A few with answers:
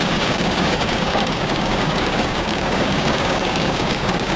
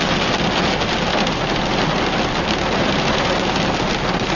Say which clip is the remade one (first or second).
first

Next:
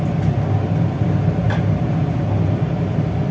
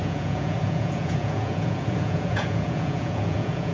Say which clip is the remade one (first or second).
second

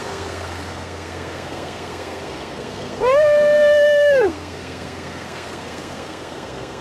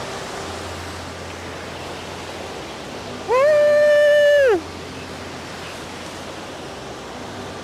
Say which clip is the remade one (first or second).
first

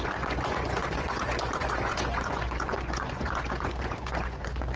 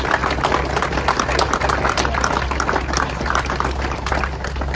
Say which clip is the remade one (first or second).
first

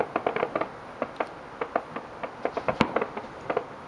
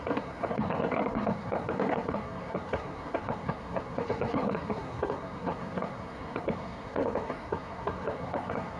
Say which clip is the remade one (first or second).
second